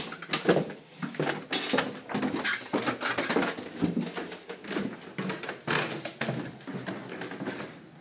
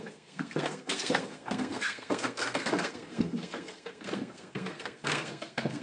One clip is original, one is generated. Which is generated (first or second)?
second